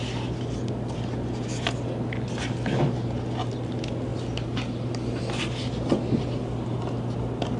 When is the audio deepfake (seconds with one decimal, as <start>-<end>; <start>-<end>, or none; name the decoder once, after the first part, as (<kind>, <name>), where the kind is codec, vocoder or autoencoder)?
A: none